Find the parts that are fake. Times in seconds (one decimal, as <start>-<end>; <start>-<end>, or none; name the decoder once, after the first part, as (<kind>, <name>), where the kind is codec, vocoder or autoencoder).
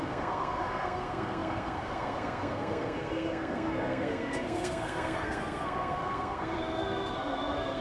0.0-7.8 (codec, SNAC)